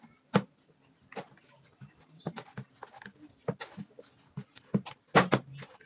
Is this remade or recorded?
recorded